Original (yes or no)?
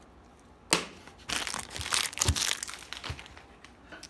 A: yes